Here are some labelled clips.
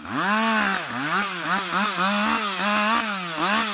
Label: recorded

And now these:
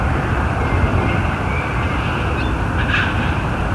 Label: recorded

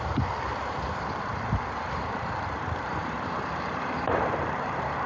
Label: remade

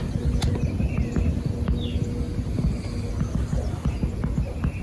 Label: recorded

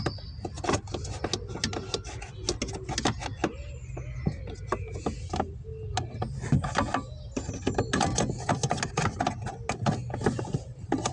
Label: recorded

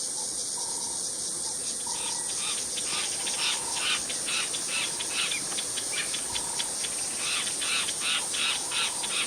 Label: recorded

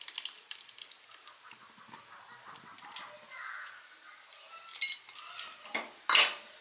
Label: recorded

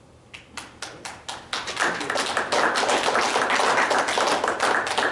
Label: recorded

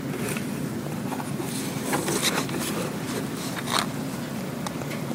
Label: recorded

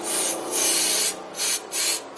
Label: recorded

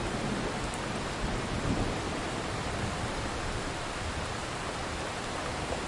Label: recorded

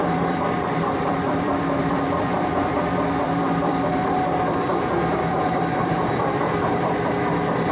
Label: remade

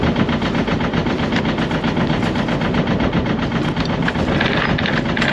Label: recorded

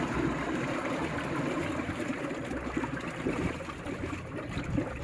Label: remade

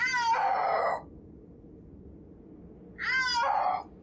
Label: recorded